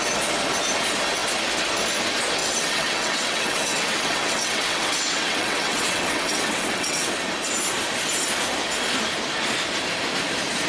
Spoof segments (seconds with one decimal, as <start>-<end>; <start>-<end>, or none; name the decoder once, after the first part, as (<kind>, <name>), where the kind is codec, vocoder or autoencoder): 2.4-7.1 (vocoder, WaveNeXt)